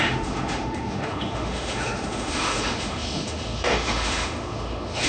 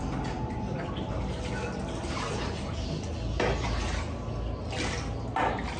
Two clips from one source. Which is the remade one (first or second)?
first